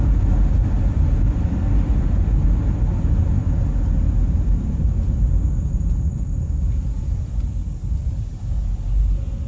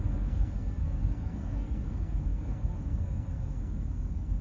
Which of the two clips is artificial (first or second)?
second